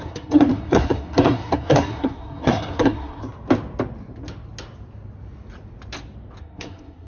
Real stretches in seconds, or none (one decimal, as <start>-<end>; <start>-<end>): 3.2-6.4

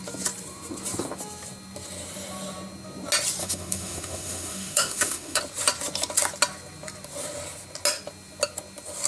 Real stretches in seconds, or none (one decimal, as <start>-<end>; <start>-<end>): 0.0-3.4; 5.4-9.1